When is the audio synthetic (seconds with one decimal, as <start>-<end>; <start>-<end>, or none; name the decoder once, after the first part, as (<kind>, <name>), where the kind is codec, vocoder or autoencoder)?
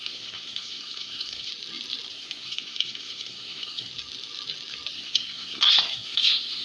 0.0-1.5 (codec, SNAC); 2.1-3.9; 4.9-6.6